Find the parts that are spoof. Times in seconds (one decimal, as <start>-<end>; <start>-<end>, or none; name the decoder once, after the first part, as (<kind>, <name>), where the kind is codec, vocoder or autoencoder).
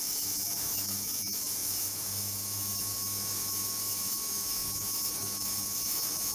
0.0-6.3 (autoencoder, DAC-VAE)